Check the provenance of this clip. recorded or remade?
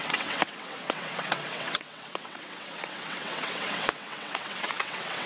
remade